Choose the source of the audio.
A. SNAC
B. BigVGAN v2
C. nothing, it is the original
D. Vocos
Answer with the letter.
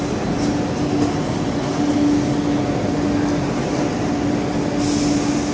C